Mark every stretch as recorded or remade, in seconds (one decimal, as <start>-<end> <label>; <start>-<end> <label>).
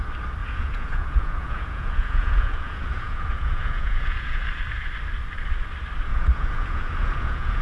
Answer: 0.0-0.4 recorded; 0.4-4.4 remade; 4.4-6.1 recorded; 6.1-7.6 remade